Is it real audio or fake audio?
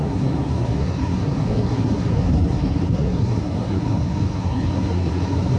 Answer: fake